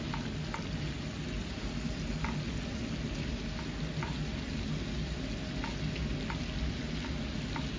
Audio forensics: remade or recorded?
recorded